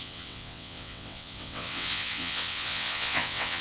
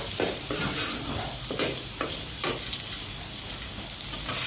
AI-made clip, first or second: first